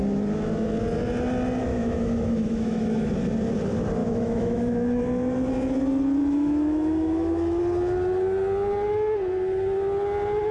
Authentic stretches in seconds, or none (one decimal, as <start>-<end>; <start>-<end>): 0.0-1.7; 3.1-4.0; 5.0-6.2; 7.6-10.5